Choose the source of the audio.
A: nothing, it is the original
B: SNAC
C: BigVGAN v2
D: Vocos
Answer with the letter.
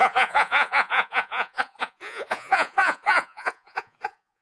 D